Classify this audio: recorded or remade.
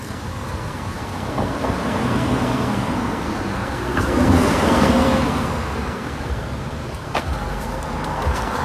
remade